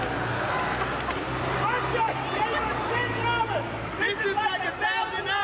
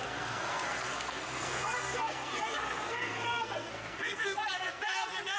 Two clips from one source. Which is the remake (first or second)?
second